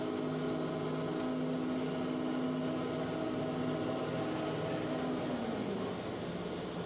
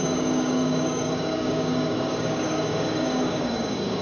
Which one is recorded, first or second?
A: first